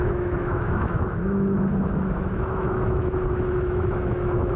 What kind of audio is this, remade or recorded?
remade